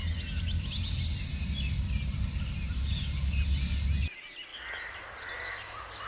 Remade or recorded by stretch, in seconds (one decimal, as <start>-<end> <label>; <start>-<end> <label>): 0.0-6.1 recorded